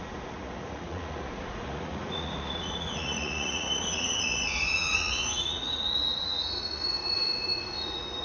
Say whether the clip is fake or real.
fake